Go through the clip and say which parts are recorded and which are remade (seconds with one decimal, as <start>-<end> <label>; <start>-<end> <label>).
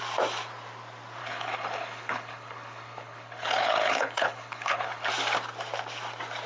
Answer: 0.0-1.2 recorded; 1.2-5.1 remade; 5.1-6.5 recorded